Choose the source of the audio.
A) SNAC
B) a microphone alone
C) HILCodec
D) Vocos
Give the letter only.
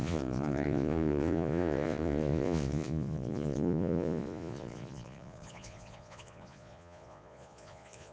D